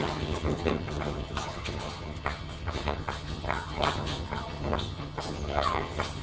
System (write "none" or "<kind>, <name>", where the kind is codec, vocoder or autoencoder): vocoder, HiFi-GAN